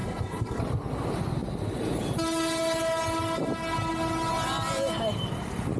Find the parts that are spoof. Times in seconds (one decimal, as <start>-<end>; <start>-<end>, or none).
0.0-0.6